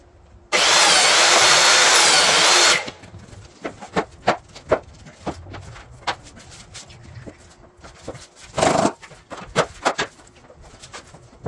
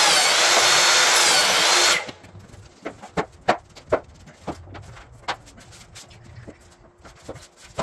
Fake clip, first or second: first